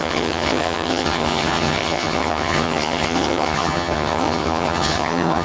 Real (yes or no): no